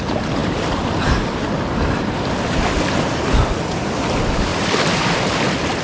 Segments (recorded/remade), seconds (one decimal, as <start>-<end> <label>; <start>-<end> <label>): 0.0-0.4 recorded; 0.4-1.0 remade; 1.0-4.5 recorded; 4.5-5.0 remade; 5.0-5.8 recorded